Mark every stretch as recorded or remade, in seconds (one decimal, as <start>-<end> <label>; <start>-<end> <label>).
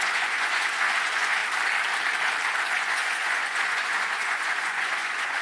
0.0-1.4 remade; 1.4-2.6 recorded; 2.6-5.4 remade